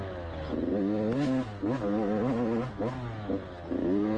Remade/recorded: recorded